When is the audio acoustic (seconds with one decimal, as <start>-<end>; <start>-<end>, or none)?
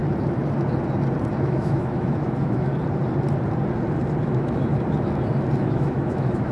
0.0-1.4; 2.7-4.2; 4.7-5.6